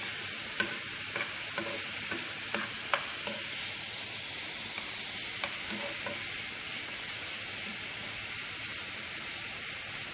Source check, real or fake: real